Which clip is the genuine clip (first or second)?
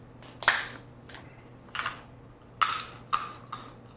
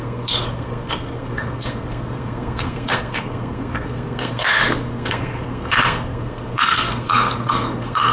first